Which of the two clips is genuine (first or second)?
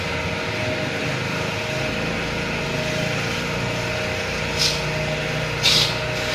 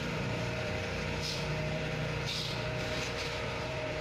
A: first